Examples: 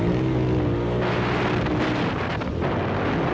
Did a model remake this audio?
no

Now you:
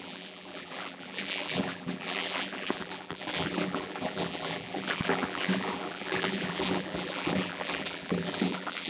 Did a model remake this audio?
yes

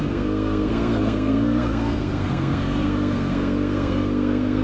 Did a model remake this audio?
yes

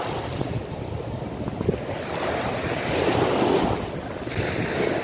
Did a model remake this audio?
no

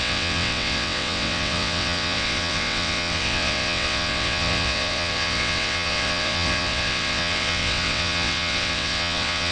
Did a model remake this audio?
yes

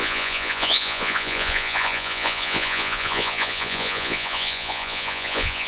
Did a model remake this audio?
yes